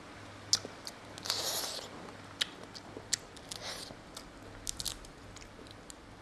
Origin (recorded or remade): recorded